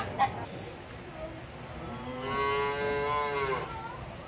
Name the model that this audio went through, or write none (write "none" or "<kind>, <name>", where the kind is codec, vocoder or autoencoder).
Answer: none